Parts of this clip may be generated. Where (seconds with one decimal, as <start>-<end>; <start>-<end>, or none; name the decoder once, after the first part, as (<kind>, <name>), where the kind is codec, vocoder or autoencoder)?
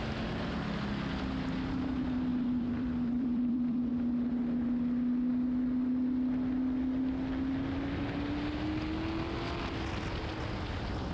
2.3-3.9 (vocoder, BigVGAN v2)